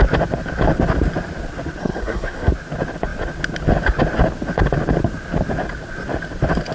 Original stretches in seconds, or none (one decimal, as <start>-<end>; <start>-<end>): 0.0-1.8; 2.5-6.7

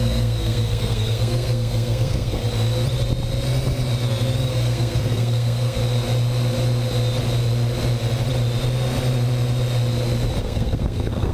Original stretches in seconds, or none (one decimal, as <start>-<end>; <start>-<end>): 2.4-4.5; 5.8-10.4

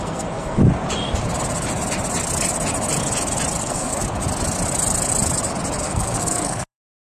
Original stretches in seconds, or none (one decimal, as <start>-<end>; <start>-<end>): 0.6-3.6; 4.0-5.8

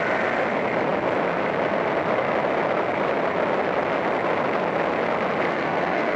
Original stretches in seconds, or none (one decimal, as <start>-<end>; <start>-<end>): 0.0-5.5

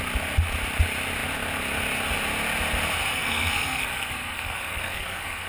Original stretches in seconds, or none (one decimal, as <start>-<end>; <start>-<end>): 0.0-3.1